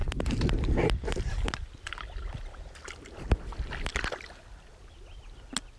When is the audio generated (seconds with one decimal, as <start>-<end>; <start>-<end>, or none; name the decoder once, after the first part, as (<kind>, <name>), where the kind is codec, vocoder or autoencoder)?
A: none